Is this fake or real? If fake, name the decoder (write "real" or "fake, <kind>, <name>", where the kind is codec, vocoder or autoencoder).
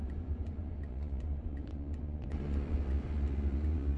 fake, vocoder, Vocos